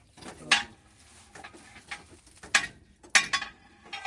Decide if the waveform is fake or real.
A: real